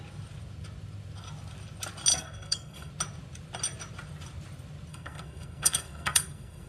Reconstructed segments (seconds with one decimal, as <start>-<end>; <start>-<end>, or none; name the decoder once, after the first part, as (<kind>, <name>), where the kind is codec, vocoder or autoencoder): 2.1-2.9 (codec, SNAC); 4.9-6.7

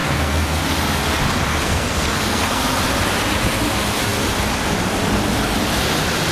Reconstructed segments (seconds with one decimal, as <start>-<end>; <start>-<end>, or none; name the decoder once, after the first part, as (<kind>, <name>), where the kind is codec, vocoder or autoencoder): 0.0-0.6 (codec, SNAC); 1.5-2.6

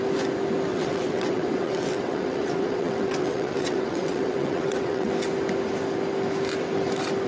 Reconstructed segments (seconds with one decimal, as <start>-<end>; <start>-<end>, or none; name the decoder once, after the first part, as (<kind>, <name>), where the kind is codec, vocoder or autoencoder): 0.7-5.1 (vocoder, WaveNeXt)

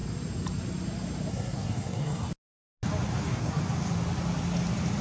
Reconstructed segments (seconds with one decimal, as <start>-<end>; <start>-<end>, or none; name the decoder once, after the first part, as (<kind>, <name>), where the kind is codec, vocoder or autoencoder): 1.3-2.3 (codec, SNAC); 3.2-3.6

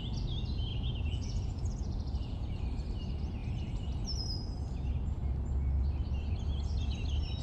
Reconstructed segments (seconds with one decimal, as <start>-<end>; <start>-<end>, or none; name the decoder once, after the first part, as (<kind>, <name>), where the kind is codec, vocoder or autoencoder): 0.7-2.6 (vocoder, Vocos)

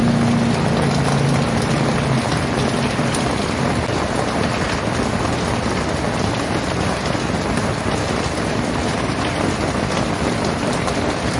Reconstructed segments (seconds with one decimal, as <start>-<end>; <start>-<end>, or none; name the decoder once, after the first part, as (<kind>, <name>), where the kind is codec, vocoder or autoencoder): none